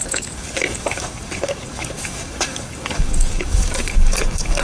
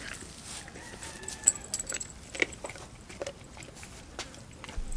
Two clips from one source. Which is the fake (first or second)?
first